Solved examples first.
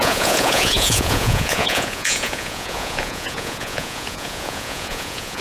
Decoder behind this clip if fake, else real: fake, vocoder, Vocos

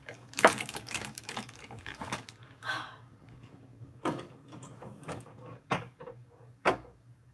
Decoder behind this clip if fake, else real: fake, codec, DAC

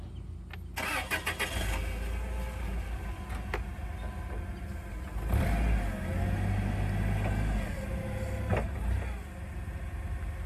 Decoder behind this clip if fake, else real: real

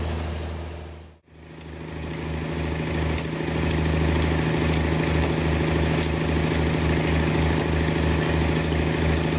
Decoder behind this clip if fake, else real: real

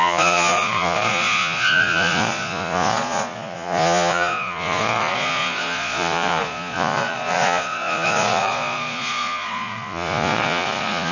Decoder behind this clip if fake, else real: fake, vocoder, Vocos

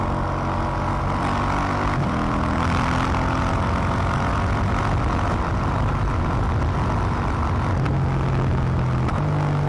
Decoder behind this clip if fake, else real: real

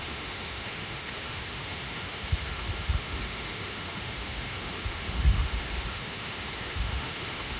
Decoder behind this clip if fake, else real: fake, autoencoder, DAC-VAE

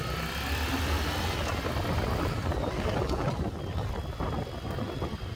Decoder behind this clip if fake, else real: real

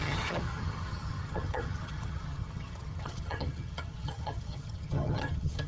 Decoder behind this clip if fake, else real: fake, vocoder, HiFi-GAN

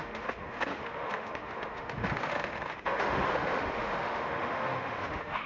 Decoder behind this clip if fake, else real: fake, autoencoder, DAC-VAE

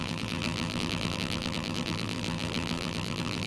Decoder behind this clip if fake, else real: fake, vocoder, BigVGAN v2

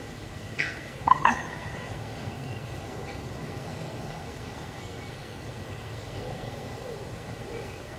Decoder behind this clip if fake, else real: fake, codec, SNAC